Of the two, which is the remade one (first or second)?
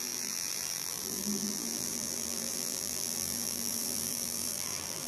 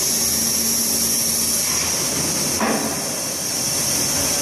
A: first